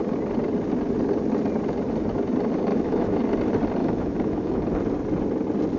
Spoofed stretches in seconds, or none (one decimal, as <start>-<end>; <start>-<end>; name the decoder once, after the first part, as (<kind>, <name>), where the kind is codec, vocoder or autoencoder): 2.7-3.2 (autoencoder, DAC-VAE); 3.8-4.6